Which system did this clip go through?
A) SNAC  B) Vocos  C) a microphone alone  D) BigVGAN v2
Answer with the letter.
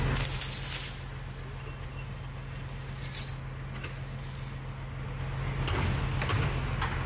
C